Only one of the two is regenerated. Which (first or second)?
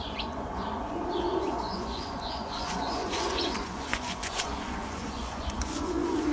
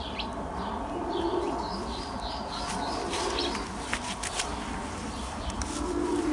first